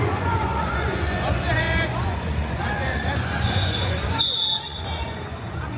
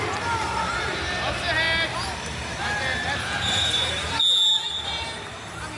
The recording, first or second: second